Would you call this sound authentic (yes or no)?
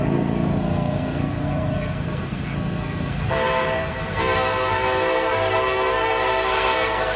no